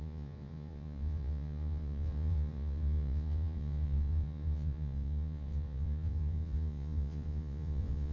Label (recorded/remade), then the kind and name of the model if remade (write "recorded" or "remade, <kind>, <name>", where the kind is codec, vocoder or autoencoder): remade, vocoder, Vocos